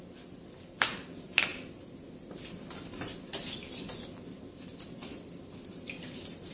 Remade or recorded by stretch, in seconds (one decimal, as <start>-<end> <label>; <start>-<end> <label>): 0.0-6.5 recorded

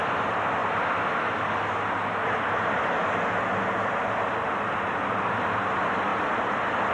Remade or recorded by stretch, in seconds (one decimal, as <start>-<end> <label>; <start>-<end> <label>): 0.0-6.9 recorded

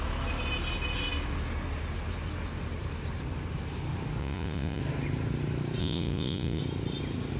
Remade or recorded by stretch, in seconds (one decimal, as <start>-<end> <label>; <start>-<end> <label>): 0.0-4.2 recorded; 4.2-4.8 remade; 4.8-5.8 recorded; 5.8-6.6 remade; 6.6-7.4 recorded